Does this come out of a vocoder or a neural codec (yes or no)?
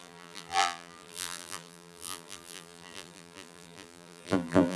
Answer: yes